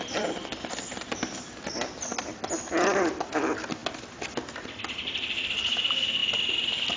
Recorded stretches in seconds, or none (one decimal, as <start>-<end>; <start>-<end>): 0.5-2.6; 3.8-4.3